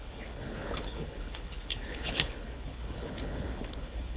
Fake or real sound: fake